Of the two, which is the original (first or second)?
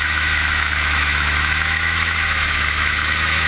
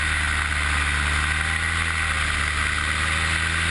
second